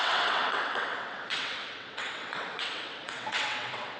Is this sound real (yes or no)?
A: no